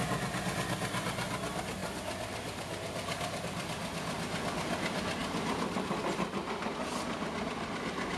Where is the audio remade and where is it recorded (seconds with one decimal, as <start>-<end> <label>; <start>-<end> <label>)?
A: 0.0-8.2 recorded